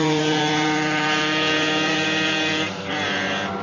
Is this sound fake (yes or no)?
yes